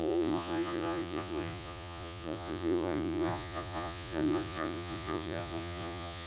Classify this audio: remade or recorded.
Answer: remade